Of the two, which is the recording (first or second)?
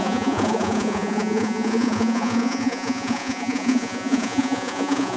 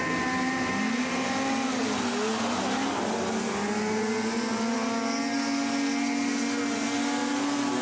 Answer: second